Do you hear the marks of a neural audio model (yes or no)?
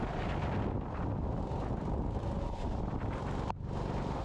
no